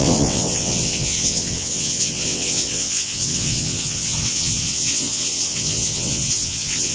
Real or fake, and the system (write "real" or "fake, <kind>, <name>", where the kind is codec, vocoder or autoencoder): fake, vocoder, WaveNeXt